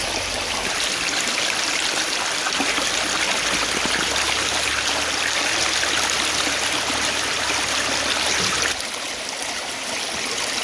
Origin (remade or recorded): recorded